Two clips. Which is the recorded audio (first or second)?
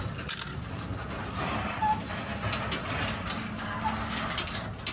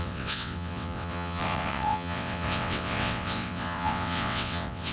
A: first